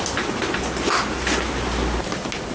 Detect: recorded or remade recorded